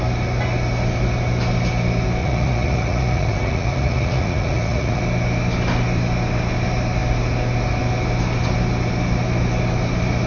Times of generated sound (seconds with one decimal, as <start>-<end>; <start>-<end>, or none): 2.2-5.0